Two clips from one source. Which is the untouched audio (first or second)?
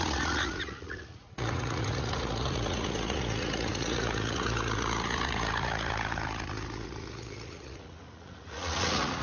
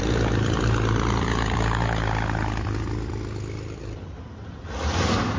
second